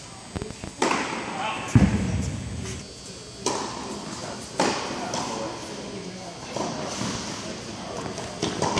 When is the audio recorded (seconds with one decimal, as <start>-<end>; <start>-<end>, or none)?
0.0-8.8